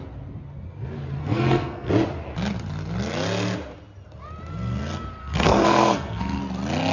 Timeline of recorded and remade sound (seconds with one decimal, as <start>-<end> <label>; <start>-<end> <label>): 0.0-1.2 recorded; 1.2-1.9 remade; 1.9-5.2 recorded; 5.2-6.4 remade; 6.4-6.9 recorded